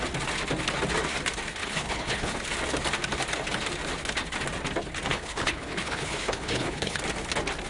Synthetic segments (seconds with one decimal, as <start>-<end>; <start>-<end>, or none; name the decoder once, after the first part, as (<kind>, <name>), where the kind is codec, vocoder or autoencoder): 1.6-2.4 (codec, HILCodec); 5.1-7.0